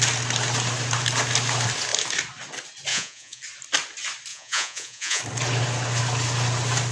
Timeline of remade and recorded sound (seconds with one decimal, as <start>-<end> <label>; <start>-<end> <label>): 0.0-2.9 recorded; 2.9-3.4 remade; 3.4-4.3 recorded; 4.3-5.2 remade; 5.2-6.9 recorded